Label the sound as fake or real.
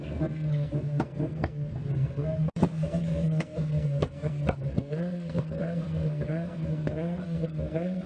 fake